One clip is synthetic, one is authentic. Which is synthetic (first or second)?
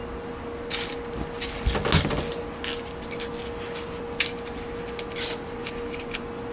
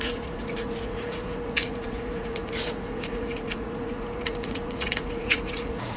second